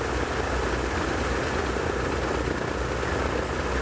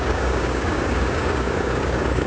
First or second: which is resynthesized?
second